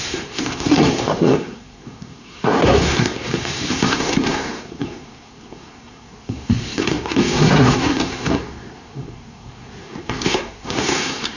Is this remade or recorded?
remade